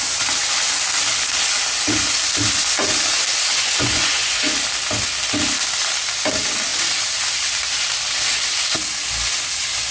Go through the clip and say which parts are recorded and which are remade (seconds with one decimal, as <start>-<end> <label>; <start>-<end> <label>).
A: 0.0-3.5 recorded; 3.5-4.4 remade; 4.4-9.9 recorded